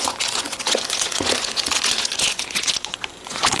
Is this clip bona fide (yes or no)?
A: no